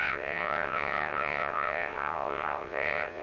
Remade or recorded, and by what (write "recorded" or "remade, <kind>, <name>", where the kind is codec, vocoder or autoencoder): remade, vocoder, WaveNeXt